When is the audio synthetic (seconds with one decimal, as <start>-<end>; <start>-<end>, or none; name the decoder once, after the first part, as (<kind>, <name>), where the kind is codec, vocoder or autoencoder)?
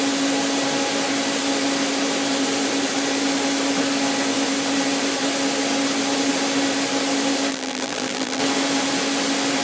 7.5-8.4 (vocoder, BigVGAN v2)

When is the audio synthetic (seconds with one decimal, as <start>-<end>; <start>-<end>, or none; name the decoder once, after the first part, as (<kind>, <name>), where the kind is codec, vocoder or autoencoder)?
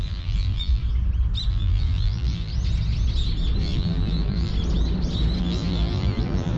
0.0-0.8 (vocoder, BigVGAN v2); 1.5-2.5; 3.6-4.5; 5.4-6.6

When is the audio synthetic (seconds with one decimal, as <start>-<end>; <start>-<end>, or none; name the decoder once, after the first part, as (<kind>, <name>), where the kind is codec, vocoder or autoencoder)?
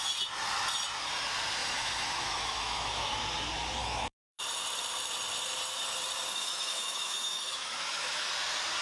1.6-3.2 (autoencoder, DAC-VAE); 3.8-4.4; 6.3-8.3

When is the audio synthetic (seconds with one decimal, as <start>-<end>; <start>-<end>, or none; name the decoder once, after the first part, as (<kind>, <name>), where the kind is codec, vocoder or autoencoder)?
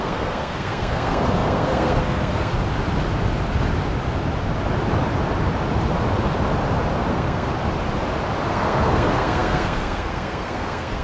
0.0-2.5 (codec, SNAC); 7.1-7.5; 8.5-11.0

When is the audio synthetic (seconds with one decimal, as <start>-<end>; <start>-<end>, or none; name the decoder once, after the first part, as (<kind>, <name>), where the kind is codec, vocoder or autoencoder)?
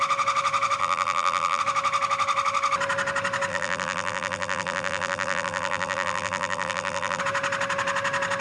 0.8-1.6 (vocoder, BigVGAN v2); 3.5-7.2